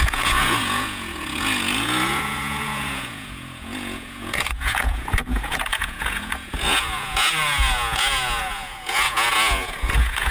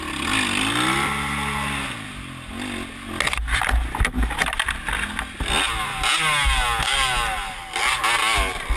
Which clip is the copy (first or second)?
first